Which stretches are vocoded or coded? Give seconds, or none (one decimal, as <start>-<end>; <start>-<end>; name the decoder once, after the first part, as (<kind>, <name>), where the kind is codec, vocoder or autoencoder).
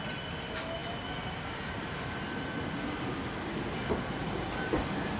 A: none